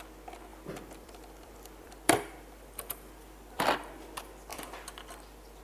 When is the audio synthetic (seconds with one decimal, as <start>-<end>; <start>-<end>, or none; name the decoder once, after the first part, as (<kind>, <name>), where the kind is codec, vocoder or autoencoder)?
0.5-3.9 (vocoder, BigVGAN v2); 4.5-5.6